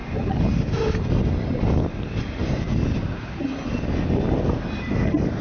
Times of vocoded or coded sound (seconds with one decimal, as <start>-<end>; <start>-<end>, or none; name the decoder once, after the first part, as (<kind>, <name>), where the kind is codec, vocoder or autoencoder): none